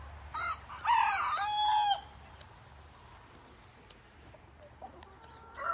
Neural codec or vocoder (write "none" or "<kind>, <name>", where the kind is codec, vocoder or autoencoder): none